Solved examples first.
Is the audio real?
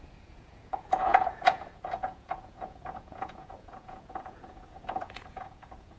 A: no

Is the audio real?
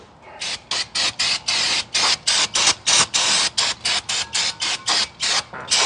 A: yes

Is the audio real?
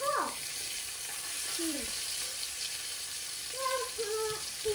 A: no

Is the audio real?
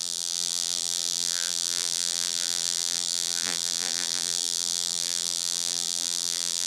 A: no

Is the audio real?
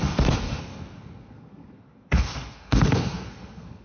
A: no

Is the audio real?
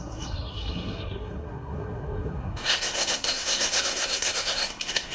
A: no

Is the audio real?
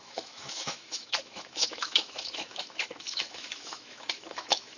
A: no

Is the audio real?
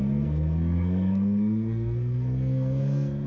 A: no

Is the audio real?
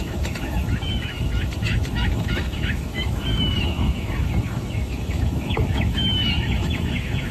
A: no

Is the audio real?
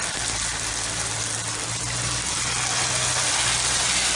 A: yes